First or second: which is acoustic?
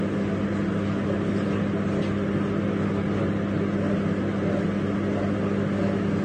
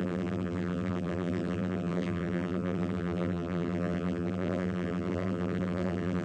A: first